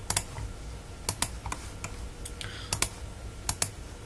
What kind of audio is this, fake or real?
real